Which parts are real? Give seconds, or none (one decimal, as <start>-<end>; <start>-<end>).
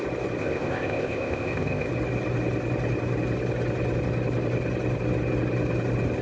0.0-0.4; 1.9-6.2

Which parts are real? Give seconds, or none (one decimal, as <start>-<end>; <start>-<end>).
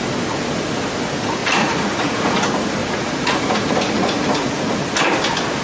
0.0-1.4; 2.4-2.8; 4.7-5.6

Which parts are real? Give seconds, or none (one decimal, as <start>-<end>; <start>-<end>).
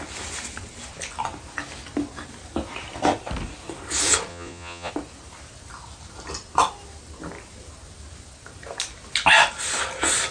0.0-4.3; 4.9-10.3